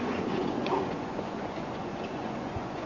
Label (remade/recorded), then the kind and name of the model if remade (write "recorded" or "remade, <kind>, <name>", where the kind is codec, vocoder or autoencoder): remade, vocoder, Vocos